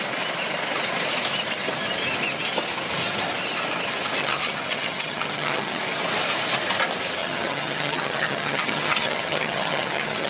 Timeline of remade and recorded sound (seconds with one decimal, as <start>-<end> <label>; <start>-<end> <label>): 0.0-4.2 recorded; 4.2-5.8 remade; 5.8-7.2 recorded; 7.2-10.3 remade